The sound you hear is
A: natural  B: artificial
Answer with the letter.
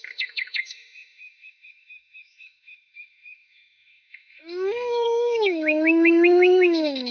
B